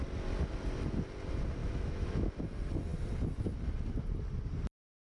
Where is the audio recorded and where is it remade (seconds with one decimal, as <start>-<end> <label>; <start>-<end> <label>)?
0.0-1.6 recorded; 1.6-2.3 remade; 2.3-5.0 recorded